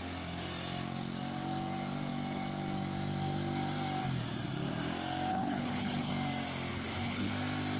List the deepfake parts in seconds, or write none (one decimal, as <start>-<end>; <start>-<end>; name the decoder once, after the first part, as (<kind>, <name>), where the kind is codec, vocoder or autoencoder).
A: 5.3-6.1 (codec, HILCodec); 6.7-7.3